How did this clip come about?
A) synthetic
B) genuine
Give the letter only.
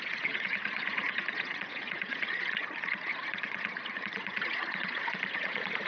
A